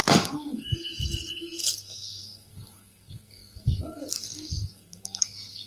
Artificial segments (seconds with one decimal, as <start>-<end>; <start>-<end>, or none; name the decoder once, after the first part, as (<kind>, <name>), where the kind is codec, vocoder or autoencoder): 0.0-5.7 (codec, SNAC)